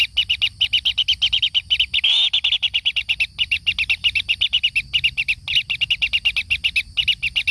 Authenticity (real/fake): real